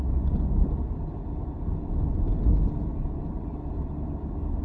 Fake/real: real